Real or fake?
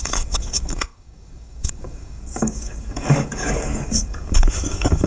fake